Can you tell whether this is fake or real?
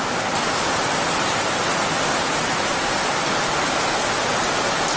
real